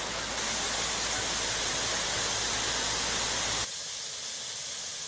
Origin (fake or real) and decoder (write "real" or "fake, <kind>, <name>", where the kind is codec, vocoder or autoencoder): real